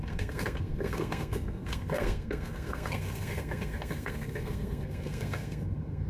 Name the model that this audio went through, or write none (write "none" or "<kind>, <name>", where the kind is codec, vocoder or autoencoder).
codec, SNAC